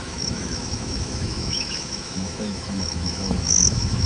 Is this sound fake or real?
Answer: fake